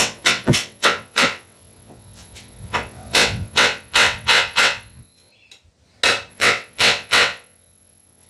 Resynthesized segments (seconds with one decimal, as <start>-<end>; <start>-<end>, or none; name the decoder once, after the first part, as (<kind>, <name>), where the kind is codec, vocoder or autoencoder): 0.0-5.3 (vocoder, WaveNeXt); 6.3-8.3